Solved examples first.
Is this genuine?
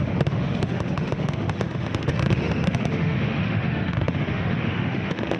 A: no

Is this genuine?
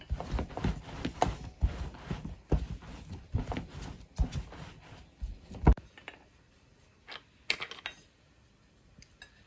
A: yes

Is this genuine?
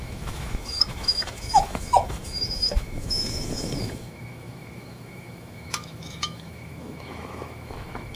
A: no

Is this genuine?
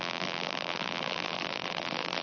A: no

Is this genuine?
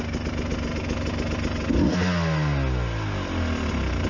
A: yes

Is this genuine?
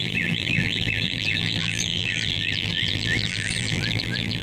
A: no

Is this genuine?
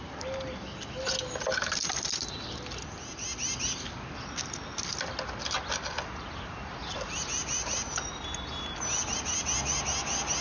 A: yes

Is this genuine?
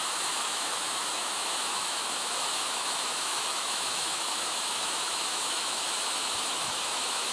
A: no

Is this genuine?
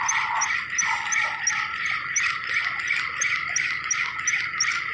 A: yes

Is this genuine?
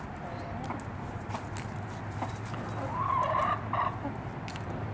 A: yes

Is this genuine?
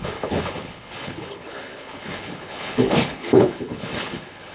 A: no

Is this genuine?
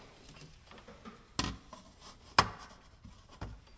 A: yes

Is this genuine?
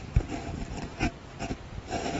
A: yes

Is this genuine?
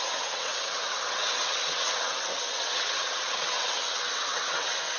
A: no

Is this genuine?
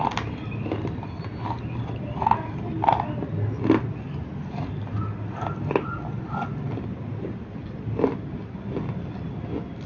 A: yes